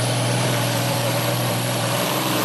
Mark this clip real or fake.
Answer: fake